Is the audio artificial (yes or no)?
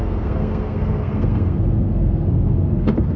yes